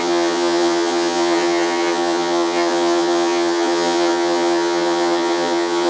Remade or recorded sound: remade